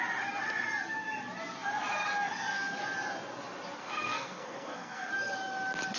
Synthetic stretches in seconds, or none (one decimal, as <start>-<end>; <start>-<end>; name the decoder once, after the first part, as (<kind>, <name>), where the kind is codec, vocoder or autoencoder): 3.8-5.1 (codec, SNAC)